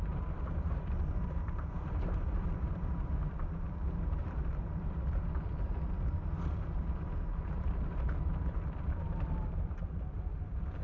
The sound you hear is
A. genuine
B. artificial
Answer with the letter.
B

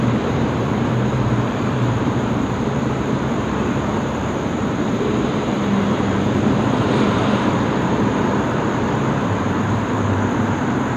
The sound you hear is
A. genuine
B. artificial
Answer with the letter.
B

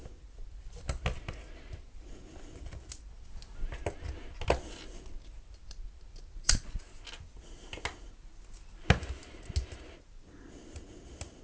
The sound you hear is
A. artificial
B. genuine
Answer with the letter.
B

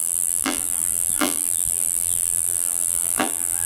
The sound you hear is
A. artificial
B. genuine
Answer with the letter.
A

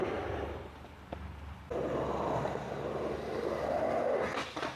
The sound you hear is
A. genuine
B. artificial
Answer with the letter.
B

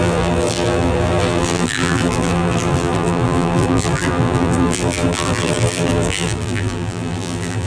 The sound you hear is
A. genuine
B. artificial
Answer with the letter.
B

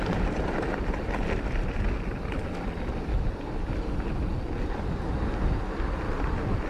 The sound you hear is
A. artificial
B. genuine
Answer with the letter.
B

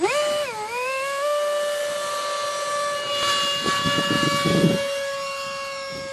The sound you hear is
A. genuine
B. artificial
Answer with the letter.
A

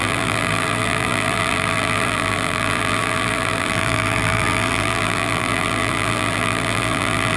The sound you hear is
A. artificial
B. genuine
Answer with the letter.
A